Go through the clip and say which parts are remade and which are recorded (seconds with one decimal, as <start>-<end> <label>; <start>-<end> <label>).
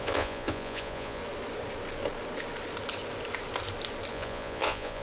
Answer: 0.0-1.2 remade; 1.2-4.1 recorded; 4.1-5.0 remade